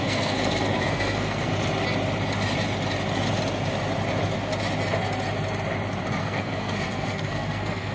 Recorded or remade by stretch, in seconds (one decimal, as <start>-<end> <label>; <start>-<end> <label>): 0.0-1.5 remade; 1.5-6.2 recorded; 6.2-7.9 remade